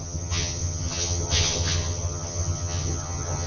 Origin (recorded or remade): remade